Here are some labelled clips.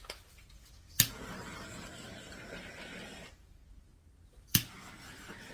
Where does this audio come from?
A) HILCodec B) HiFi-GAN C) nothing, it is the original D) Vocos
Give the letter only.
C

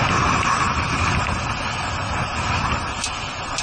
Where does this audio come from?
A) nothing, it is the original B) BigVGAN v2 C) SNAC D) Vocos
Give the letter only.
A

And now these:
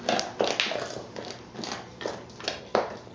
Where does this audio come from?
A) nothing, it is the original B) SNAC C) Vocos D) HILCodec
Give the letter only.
A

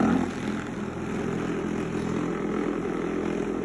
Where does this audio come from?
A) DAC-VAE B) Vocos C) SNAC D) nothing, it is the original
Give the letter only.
D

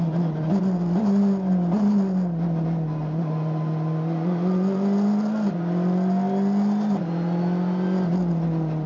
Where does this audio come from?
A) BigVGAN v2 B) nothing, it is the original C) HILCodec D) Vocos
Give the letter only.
B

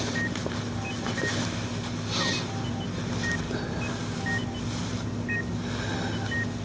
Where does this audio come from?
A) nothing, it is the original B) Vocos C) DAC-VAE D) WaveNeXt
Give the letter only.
A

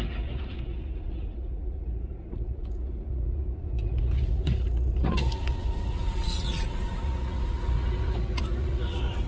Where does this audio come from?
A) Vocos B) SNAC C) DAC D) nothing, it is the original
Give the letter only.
A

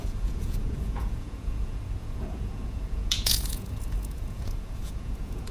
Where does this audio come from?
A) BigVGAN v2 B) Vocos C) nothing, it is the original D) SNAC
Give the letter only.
B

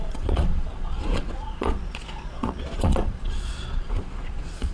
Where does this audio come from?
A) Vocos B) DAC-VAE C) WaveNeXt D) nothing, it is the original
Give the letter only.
A